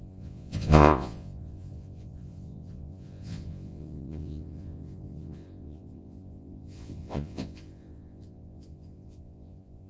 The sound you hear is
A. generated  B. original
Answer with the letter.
A